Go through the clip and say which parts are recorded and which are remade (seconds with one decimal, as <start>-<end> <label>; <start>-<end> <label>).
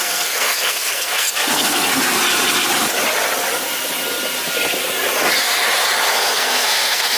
0.0-1.9 remade; 1.9-6.1 recorded; 6.1-7.2 remade